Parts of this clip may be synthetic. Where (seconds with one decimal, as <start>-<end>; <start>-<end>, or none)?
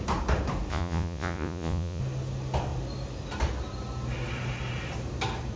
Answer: 0.7-2.0